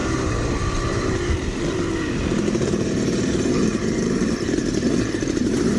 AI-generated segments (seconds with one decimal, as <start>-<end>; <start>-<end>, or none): 0.0-5.8